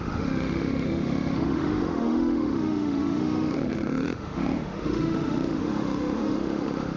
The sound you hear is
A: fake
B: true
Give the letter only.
A